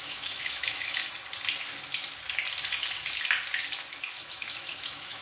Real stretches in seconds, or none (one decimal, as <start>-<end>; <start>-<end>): 1.0-4.1